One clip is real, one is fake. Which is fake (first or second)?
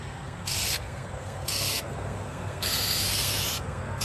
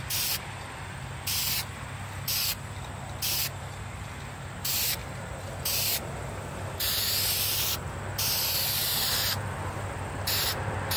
first